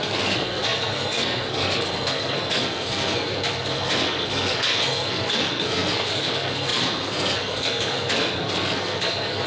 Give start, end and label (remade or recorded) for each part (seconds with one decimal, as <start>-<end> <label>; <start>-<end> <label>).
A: 0.0-9.5 remade